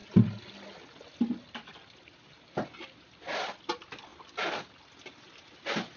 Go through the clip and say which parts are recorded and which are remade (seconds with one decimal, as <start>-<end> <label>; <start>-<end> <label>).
0.0-6.0 recorded